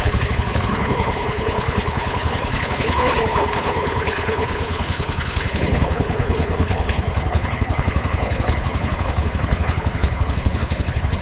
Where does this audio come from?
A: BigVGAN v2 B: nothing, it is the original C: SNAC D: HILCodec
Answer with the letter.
D